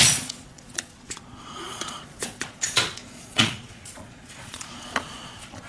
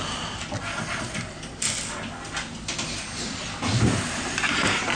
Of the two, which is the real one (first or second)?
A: second